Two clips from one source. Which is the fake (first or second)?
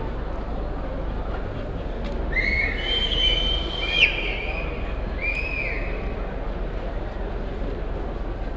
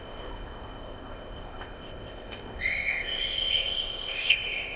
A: second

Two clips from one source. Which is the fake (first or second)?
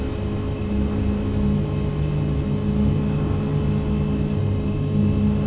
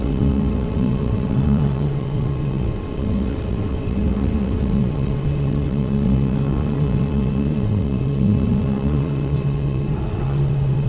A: second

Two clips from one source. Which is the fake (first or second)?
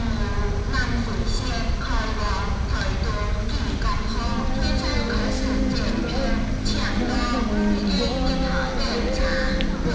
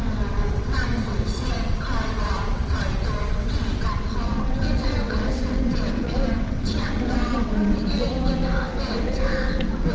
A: second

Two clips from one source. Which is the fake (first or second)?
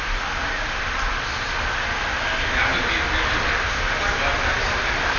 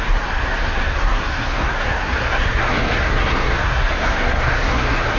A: second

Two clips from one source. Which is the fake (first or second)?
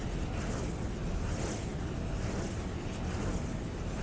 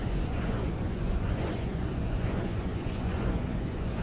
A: second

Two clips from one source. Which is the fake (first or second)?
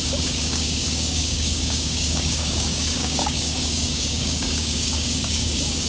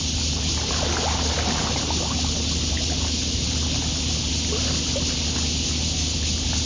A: first